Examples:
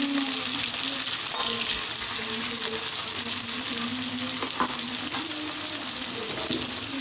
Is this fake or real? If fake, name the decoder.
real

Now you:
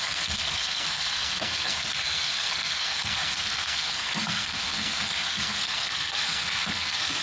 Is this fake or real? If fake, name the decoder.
fake, codec, SNAC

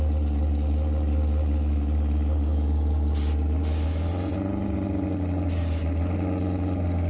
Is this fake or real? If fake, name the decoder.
real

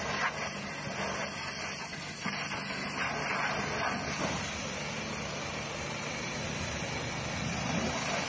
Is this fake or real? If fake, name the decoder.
real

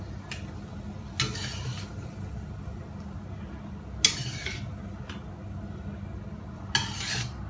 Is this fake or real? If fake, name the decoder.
real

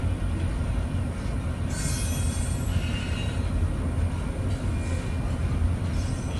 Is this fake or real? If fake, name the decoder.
real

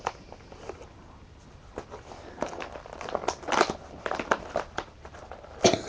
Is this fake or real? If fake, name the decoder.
real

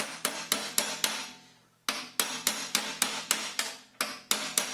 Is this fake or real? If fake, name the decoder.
real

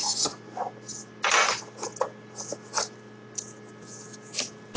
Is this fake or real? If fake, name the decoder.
real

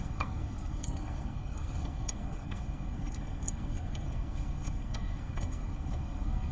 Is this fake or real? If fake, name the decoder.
fake, codec, SNAC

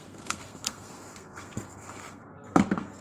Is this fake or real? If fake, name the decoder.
fake, codec, SNAC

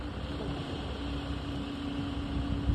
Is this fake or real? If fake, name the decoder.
real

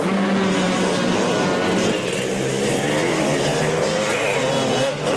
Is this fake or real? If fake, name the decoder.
real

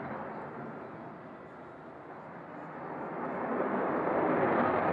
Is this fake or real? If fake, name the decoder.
real